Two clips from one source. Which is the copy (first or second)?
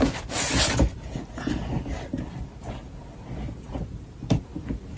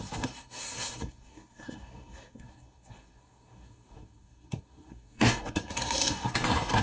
second